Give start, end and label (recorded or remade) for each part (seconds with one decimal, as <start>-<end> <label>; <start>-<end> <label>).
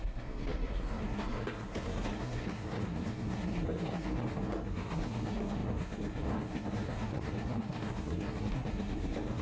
0.0-9.4 remade